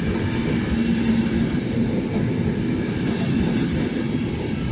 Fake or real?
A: real